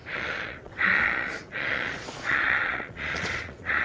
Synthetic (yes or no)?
yes